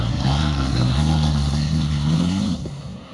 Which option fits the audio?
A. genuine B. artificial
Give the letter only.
B